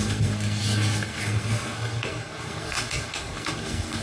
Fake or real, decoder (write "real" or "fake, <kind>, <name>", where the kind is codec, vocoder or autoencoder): fake, codec, SNAC